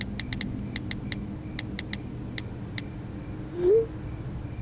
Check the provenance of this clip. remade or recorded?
recorded